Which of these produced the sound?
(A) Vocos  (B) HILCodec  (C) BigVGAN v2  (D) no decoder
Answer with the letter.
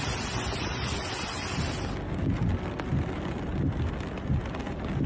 D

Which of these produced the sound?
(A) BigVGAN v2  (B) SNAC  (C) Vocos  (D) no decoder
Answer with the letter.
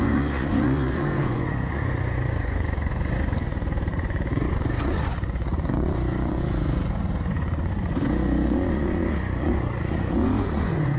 C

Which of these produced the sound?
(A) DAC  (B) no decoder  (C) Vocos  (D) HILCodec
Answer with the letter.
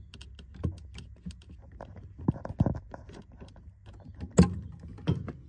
B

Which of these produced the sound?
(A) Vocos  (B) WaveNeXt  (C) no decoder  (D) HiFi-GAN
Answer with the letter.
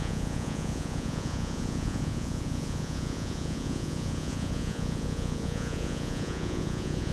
A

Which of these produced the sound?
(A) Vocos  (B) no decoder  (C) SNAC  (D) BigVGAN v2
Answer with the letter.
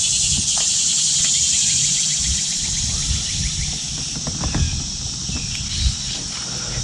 B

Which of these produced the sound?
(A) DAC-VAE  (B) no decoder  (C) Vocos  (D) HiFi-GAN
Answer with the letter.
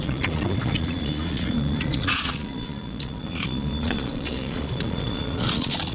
C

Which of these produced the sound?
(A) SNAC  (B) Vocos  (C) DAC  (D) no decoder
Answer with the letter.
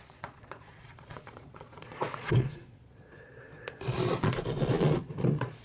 B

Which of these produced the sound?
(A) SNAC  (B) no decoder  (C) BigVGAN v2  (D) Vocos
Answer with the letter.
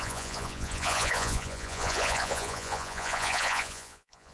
D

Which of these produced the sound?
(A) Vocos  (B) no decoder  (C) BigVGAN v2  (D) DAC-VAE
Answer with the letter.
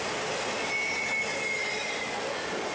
B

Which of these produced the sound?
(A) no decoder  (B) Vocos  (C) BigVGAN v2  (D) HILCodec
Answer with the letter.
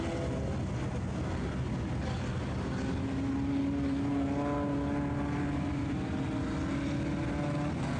A